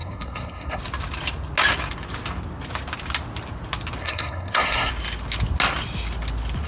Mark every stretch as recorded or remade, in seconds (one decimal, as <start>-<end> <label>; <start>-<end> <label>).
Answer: 0.0-0.8 remade; 0.8-4.0 recorded; 4.0-4.9 remade; 4.9-6.7 recorded